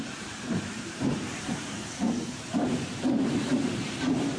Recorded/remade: remade